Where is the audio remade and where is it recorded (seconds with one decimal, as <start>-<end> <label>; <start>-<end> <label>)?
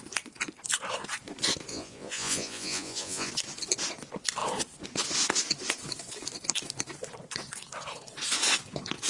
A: 0.0-1.7 recorded; 1.7-3.3 remade; 3.3-9.1 recorded